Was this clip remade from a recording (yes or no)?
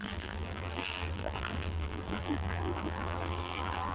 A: yes